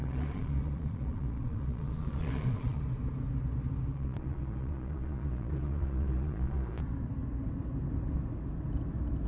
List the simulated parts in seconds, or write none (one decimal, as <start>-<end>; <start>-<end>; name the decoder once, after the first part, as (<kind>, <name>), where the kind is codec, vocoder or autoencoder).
0.0-2.8 (vocoder, Vocos); 3.9-6.8